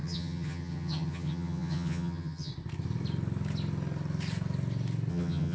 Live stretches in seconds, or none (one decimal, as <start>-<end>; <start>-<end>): 2.5-5.1